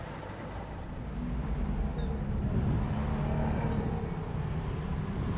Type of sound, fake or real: real